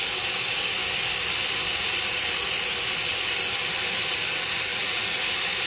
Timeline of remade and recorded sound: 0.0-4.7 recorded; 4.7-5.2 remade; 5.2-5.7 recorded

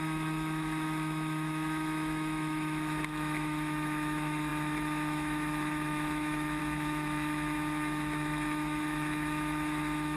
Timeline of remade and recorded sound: 0.0-10.2 remade

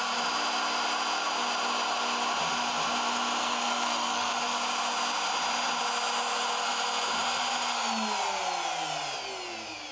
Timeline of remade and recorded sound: 0.0-3.4 recorded; 3.4-4.3 remade; 4.3-9.9 recorded

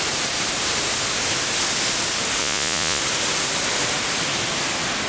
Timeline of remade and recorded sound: 0.0-2.4 recorded; 2.4-3.0 remade; 3.0-5.1 recorded

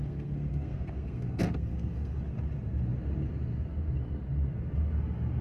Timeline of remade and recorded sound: 0.0-2.2 remade; 2.2-5.4 recorded

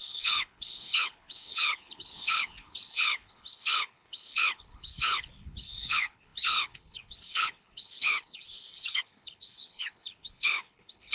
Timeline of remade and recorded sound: 0.0-11.1 remade

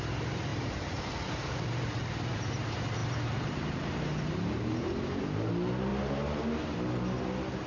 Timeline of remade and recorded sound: 0.0-0.5 recorded; 0.5-1.0 remade; 1.0-3.0 recorded; 3.0-5.5 remade; 5.5-5.9 recorded; 5.9-7.0 remade; 7.0-7.7 recorded

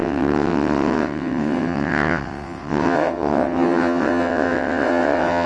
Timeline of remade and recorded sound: 0.0-5.5 remade